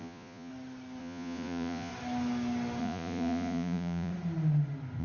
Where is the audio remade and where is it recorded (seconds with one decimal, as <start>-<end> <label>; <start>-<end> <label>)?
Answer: 0.0-0.5 remade; 0.5-1.0 recorded; 1.0-1.9 remade; 1.9-2.8 recorded; 2.8-4.1 remade; 4.1-5.0 recorded